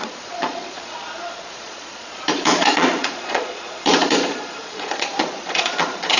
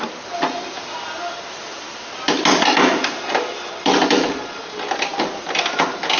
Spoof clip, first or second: first